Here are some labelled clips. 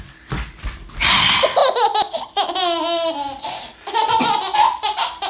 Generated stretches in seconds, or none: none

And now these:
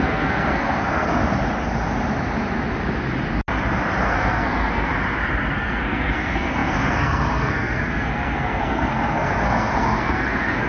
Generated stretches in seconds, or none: 0.0-1.2 (codec, SNAC); 4.0-4.9; 5.5-10.7

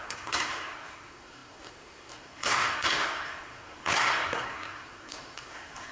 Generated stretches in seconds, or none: 0.0-5.9 (codec, SNAC)

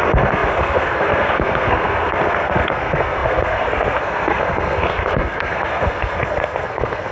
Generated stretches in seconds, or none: 0.0-7.1 (codec, SNAC)

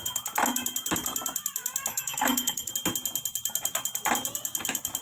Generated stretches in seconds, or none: 1.9-2.7 (codec, SNAC)